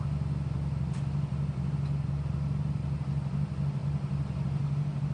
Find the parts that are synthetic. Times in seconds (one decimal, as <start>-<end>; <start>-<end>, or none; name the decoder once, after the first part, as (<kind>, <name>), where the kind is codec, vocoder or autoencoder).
none